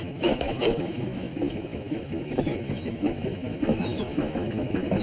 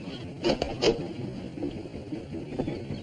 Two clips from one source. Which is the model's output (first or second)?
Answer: first